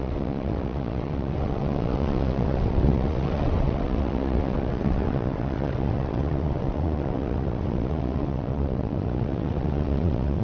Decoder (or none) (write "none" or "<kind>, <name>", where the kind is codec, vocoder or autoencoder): vocoder, WaveNeXt